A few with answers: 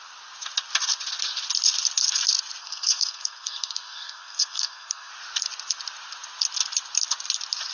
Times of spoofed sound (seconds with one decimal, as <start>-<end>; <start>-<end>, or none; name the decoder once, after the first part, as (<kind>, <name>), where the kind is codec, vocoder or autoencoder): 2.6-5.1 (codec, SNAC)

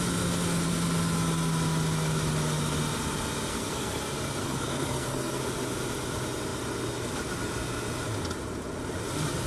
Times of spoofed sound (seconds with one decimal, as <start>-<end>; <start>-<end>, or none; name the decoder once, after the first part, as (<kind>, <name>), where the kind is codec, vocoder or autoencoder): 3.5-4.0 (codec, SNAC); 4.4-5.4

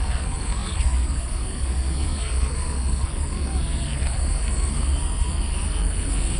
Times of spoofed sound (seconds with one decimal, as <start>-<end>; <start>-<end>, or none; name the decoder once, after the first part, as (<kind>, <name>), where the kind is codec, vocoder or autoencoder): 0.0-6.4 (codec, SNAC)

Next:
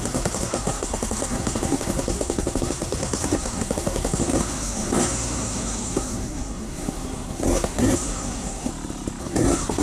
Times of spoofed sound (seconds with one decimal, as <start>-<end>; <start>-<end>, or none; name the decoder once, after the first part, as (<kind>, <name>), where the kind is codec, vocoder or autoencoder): 0.0-8.7 (codec, SNAC); 9.2-9.8